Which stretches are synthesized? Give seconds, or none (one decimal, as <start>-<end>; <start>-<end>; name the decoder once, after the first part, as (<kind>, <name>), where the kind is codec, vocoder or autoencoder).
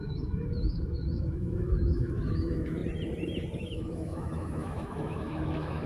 0.0-2.8 (autoencoder, DAC-VAE); 3.6-5.9